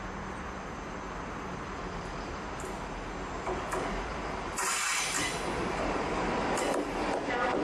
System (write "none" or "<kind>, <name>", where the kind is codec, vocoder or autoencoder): none